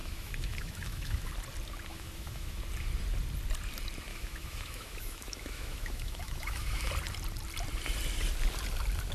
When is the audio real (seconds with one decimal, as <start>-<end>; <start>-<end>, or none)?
1.3-1.9; 2.6-4.1; 6.9-9.1